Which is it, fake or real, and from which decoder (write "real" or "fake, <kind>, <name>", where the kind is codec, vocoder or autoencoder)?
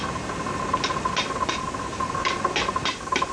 fake, vocoder, BigVGAN v2